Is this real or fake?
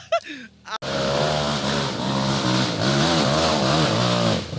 real